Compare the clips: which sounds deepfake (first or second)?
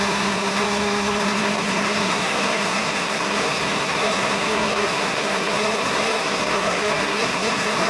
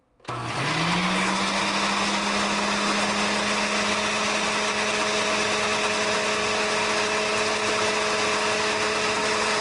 first